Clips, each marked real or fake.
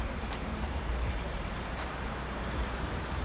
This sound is fake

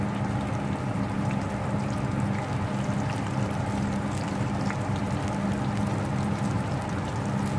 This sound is real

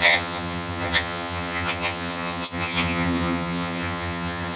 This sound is fake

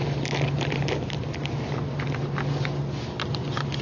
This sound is real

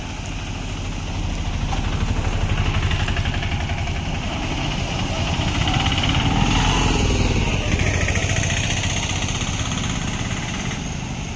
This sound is real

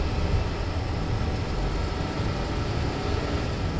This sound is real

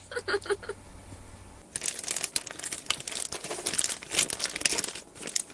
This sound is real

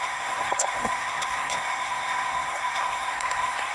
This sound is fake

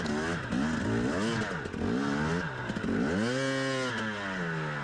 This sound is real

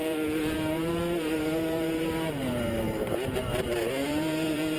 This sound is fake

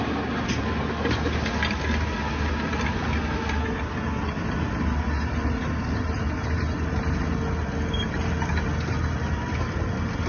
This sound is real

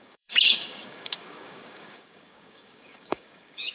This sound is fake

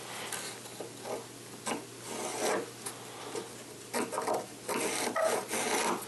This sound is real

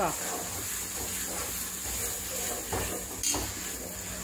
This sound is real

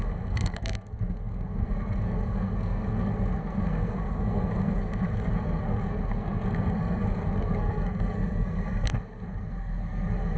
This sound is fake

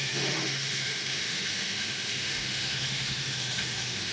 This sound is fake